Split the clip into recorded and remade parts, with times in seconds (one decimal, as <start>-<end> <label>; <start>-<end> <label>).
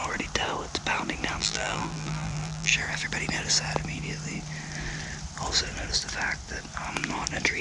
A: 0.0-1.4 recorded; 1.4-2.7 remade; 2.7-7.6 recorded